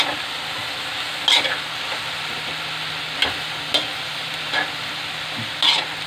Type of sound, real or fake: real